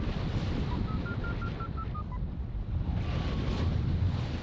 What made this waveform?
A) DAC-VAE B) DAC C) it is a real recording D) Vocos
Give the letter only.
C